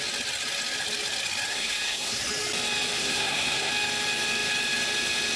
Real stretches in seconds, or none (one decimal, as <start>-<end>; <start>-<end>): 0.0-1.5; 2.2-3.0; 3.7-5.4